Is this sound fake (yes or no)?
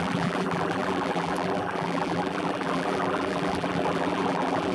yes